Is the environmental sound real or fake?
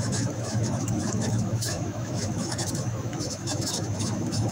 fake